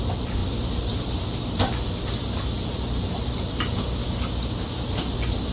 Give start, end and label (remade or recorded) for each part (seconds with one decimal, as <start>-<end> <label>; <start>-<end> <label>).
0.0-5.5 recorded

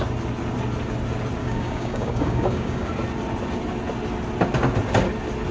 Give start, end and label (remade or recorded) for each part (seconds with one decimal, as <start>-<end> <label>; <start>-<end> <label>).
0.0-1.4 recorded; 1.4-2.9 remade; 2.9-5.5 recorded

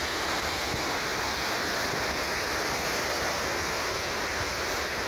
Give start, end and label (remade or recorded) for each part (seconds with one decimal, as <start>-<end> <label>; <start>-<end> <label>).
0.0-5.1 recorded